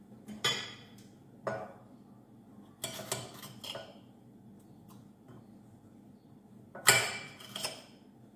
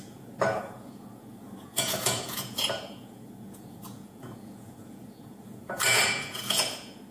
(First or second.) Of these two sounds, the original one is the first